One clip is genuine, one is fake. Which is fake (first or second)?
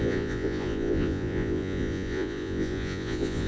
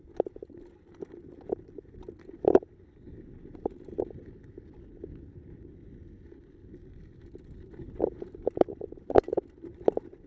first